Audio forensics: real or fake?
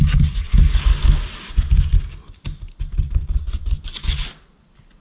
real